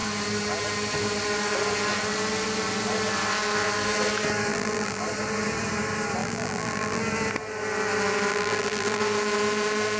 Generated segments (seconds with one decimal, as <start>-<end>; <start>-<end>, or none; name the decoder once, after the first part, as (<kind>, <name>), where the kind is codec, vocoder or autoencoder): 4.5-5.0 (vocoder, BigVGAN v2); 6.2-7.0; 8.3-9.0